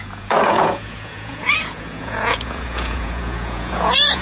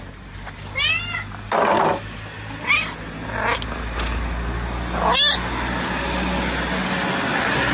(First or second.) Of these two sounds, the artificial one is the first